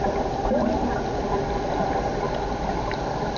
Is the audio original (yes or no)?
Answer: yes